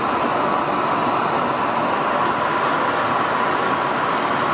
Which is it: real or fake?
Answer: real